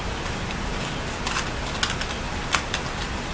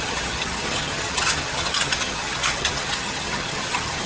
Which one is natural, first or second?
first